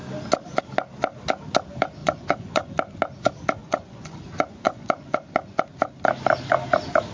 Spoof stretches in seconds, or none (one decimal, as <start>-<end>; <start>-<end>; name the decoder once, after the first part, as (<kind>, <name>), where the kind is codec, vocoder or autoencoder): 2.0-2.7 (vocoder, Vocos); 3.6-5.6